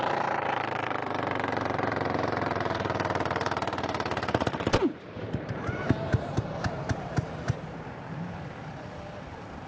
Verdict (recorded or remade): remade